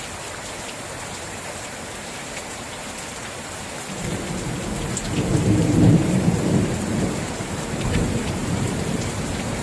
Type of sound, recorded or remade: remade